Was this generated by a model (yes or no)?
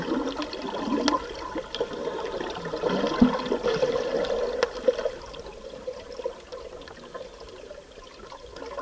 no